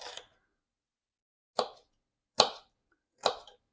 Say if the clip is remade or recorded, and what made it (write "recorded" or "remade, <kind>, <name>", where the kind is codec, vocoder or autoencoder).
recorded